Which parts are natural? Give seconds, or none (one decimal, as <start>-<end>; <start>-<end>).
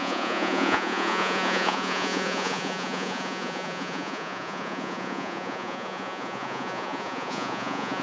none